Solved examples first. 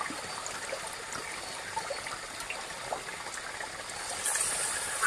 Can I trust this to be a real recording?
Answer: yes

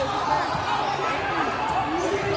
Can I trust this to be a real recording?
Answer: yes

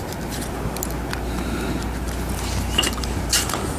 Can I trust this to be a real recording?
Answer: yes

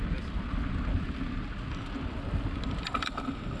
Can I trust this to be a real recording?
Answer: yes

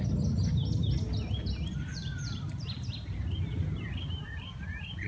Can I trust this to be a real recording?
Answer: yes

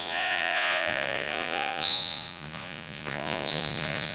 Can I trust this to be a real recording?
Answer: no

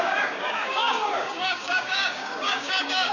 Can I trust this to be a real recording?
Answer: no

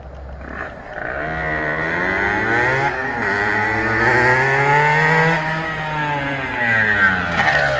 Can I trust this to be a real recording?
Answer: yes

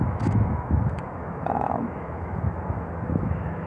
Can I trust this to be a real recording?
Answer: no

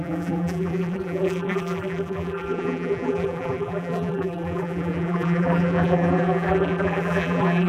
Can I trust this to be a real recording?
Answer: no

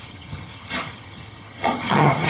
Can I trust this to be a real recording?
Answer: no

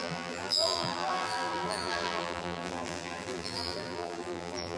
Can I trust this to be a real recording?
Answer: no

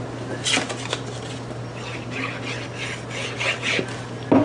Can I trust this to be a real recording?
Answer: yes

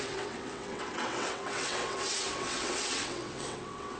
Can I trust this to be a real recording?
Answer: no